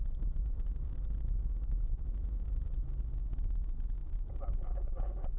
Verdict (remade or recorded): recorded